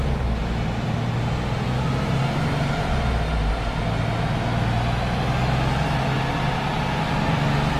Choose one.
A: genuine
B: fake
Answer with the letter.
A